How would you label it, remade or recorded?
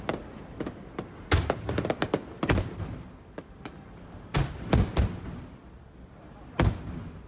recorded